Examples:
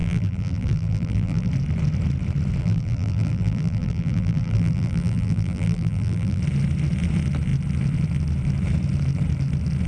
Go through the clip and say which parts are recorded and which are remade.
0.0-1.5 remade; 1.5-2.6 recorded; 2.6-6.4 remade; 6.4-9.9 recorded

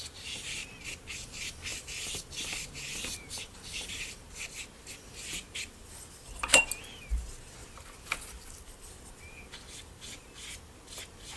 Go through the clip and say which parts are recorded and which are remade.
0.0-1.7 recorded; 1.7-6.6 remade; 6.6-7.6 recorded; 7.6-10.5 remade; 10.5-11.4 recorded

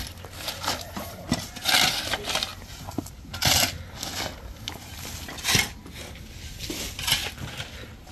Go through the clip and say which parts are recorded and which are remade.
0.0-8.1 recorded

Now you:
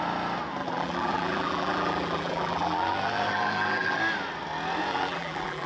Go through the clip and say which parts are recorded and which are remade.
0.0-0.6 recorded; 0.6-4.0 remade; 4.0-4.9 recorded; 4.9-5.7 remade